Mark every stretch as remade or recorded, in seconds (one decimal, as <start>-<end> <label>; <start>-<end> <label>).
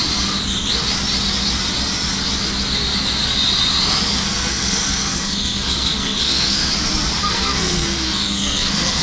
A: 0.0-4.1 recorded; 4.1-6.6 remade; 6.6-7.2 recorded; 7.2-9.0 remade